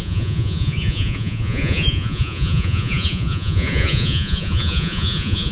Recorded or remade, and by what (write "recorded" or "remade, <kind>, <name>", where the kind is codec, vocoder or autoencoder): remade, vocoder, Vocos